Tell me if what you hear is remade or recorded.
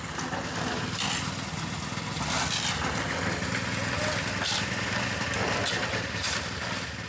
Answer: recorded